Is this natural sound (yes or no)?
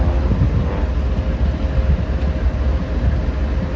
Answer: yes